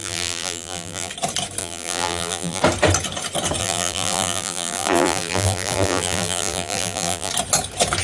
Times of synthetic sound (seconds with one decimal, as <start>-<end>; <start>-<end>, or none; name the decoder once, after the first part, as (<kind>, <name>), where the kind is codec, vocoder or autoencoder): 0.0-1.1 (vocoder, BigVGAN v2); 1.6-2.6; 3.6-7.3